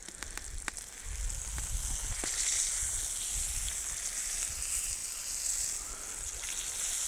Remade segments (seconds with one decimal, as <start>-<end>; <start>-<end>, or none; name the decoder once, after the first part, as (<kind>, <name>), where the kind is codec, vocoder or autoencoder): none